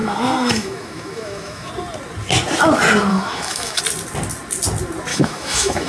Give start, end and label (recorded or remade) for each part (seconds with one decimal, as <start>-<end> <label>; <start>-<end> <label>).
0.0-1.7 remade; 1.7-3.1 recorded; 3.1-3.8 remade; 3.8-5.1 recorded; 5.1-5.9 remade